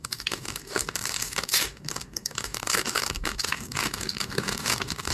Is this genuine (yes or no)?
no